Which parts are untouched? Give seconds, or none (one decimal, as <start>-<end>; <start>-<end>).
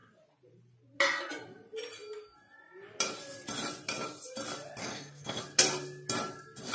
0.0-4.8; 5.4-6.7